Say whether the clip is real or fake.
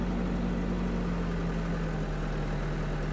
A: real